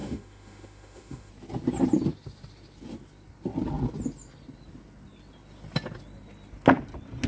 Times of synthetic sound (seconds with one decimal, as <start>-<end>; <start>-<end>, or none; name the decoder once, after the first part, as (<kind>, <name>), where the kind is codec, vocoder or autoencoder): 0.0-1.3 (autoencoder, DAC-VAE)